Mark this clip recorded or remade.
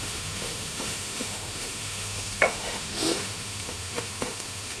remade